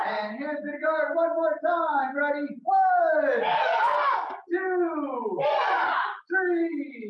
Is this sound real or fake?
real